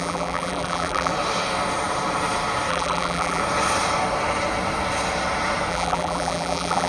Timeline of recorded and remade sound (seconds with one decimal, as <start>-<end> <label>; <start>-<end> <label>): 0.0-1.1 remade; 1.1-2.7 recorded; 2.7-3.4 remade; 3.4-5.7 recorded; 5.7-6.9 remade